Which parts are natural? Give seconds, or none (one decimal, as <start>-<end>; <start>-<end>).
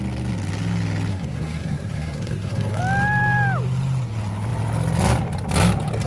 0.0-1.1; 2.8-6.1